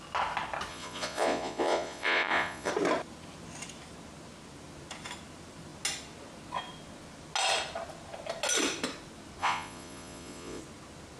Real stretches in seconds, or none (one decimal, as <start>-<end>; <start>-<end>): 0.0-0.7; 2.7-9.4; 10.6-11.2